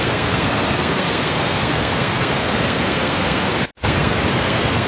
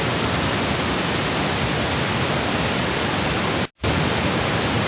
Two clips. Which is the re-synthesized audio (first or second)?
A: first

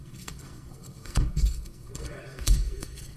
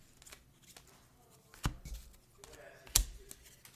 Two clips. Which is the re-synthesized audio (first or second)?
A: first